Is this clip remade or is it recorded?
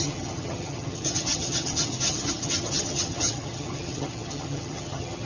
remade